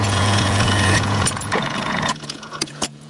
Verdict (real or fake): fake